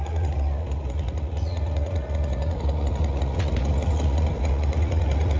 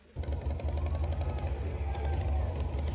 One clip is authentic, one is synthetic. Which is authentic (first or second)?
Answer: second